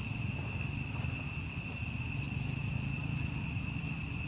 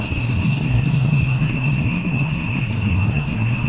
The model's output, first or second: second